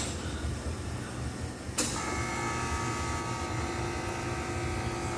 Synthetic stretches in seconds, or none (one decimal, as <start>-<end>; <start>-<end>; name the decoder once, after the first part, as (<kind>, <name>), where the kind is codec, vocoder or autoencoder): none